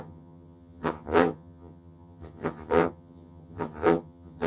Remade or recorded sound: remade